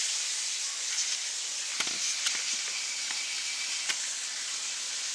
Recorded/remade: recorded